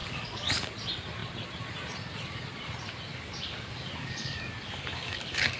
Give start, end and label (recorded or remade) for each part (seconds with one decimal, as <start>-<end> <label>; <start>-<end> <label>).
0.0-0.7 remade; 0.7-3.1 recorded; 3.1-5.6 remade